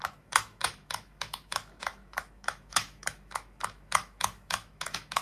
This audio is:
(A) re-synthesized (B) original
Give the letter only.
A